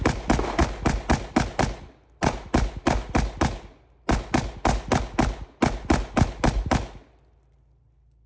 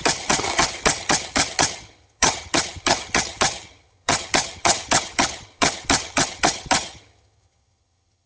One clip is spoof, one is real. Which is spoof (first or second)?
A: second